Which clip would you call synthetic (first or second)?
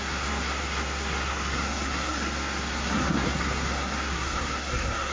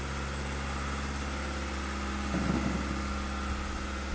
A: first